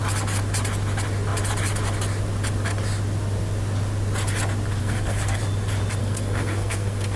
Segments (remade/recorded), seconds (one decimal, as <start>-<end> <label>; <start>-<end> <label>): 0.0-4.8 recorded; 4.8-5.4 remade; 5.4-6.0 recorded; 6.0-7.2 remade